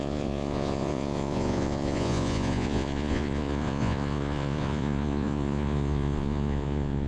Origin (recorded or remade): remade